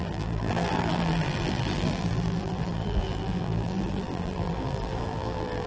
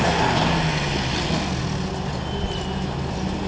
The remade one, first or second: first